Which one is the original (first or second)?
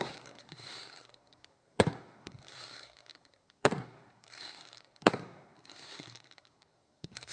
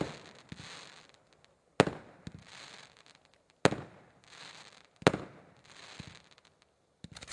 second